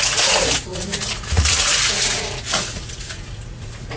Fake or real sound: fake